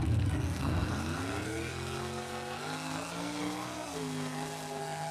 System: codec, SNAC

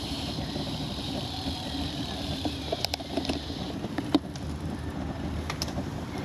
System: vocoder, BigVGAN v2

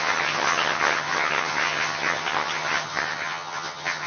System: vocoder, HiFi-GAN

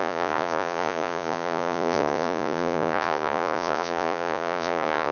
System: vocoder, Vocos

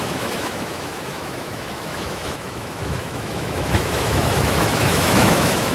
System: autoencoder, DAC-VAE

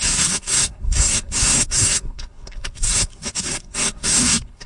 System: codec, SNAC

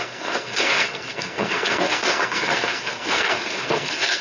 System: codec, SNAC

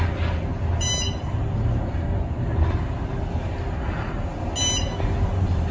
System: none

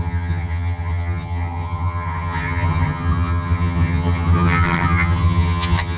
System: vocoder, HiFi-GAN